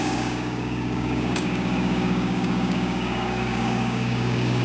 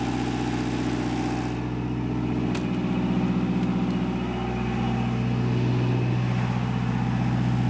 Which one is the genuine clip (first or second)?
second